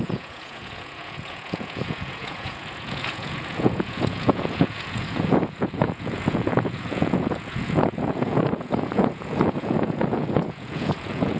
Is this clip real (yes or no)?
no